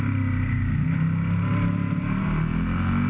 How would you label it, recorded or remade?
recorded